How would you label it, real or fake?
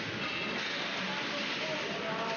real